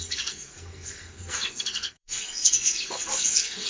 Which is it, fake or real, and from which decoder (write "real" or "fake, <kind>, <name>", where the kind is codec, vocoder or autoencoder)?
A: fake, codec, SNAC